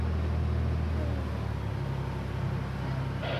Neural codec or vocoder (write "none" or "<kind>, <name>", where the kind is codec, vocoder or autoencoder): none